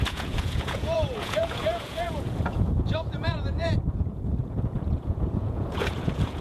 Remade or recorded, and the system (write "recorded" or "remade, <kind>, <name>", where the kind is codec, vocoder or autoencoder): remade, vocoder, Vocos